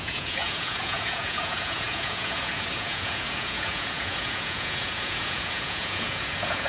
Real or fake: fake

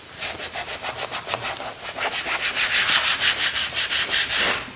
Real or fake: real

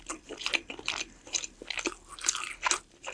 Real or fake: real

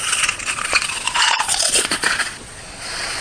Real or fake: fake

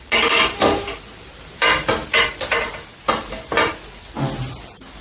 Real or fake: real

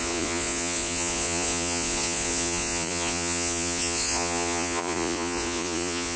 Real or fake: fake